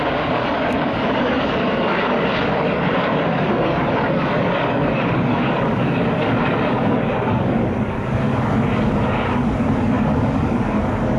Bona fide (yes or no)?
no